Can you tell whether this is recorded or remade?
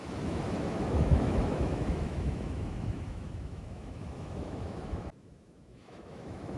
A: remade